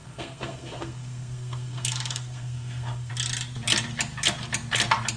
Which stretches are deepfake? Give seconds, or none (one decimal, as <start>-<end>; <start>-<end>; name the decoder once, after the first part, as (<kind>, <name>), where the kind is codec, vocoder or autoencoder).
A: 0.0-3.1 (codec, SNAC)